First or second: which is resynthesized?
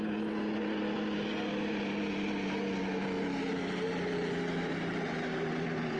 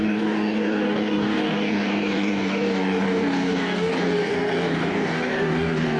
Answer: second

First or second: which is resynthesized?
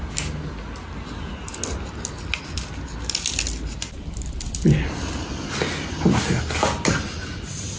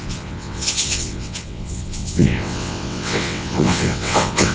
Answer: second